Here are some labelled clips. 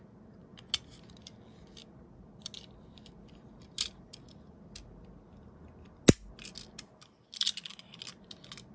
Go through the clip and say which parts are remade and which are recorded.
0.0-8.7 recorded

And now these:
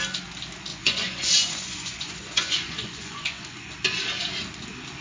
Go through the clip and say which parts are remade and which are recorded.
0.0-0.7 recorded; 0.7-3.7 remade; 3.7-5.0 recorded

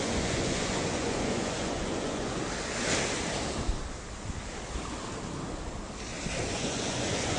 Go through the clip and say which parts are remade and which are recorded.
0.0-2.4 remade; 2.4-6.5 recorded; 6.5-7.4 remade